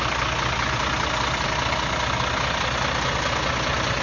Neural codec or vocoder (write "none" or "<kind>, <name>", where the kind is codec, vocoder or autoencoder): none